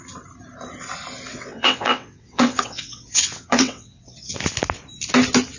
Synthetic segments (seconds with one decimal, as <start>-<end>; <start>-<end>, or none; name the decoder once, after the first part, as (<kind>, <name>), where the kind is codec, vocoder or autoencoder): 1.3-4.4 (vocoder, WaveNeXt)